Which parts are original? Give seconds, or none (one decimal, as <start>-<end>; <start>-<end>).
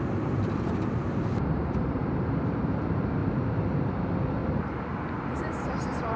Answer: 4.4-5.2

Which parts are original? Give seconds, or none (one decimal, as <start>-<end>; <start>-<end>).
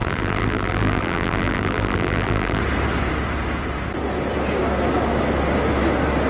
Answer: 2.6-6.3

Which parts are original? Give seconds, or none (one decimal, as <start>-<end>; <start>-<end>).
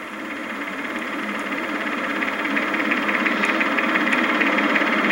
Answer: 2.1-4.3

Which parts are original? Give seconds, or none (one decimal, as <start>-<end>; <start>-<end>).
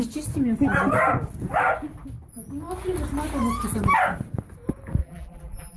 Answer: 0.0-5.0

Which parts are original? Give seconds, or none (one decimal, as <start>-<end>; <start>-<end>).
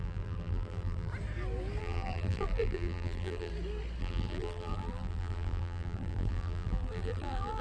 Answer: 1.1-1.8; 3.5-4.0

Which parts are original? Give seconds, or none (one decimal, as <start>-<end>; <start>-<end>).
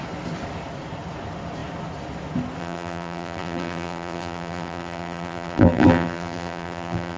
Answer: 0.0-2.6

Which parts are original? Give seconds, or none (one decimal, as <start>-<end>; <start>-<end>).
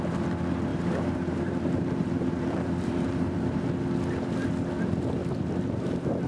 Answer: 0.0-0.7; 3.7-6.3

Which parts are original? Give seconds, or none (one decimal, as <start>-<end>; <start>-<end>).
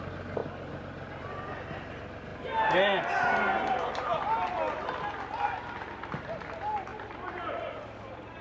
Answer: 0.0-6.9